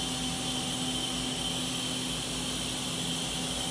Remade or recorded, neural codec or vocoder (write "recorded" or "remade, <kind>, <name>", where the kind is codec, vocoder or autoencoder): recorded